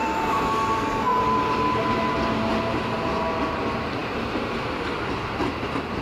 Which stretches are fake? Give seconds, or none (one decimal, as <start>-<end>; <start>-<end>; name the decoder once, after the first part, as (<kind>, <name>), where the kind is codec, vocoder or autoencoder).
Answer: 0.0-1.2 (codec, SNAC)